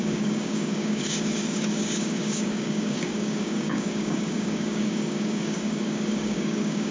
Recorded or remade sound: remade